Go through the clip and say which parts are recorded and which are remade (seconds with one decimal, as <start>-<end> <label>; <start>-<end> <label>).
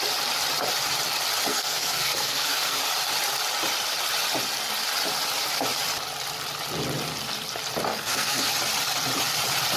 0.0-1.5 recorded; 1.5-2.8 remade; 2.8-7.9 recorded; 7.9-8.5 remade; 8.5-9.8 recorded